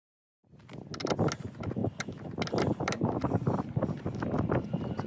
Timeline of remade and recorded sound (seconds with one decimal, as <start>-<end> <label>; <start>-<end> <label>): 0.0-5.1 recorded